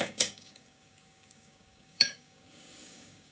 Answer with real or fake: fake